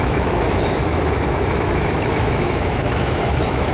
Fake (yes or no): yes